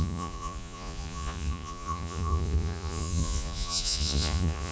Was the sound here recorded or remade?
remade